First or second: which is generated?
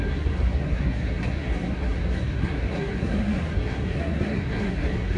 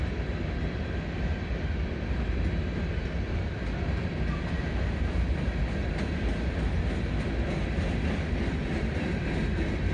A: first